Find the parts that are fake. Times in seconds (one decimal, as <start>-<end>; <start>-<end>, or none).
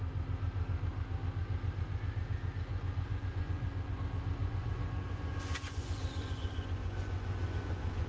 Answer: 2.7-4.0; 4.4-8.1